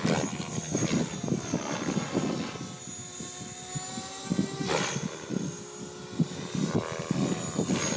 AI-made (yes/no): no